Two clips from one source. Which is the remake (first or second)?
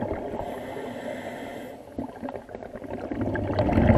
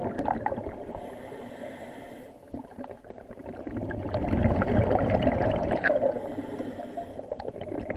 second